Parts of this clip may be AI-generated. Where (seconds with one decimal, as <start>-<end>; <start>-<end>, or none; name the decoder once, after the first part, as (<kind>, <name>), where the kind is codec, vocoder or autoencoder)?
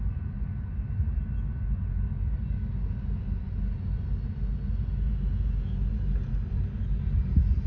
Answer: none